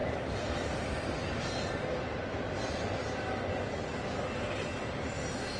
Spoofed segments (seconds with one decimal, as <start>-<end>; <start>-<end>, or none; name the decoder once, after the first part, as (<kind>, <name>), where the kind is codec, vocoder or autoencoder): 3.4-3.9 (vocoder, Vocos)